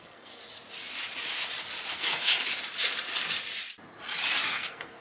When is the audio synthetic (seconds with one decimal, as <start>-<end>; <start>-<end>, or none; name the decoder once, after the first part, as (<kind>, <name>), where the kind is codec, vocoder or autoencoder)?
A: 0.0-0.4 (codec, SNAC); 1.9-2.3; 4.5-5.0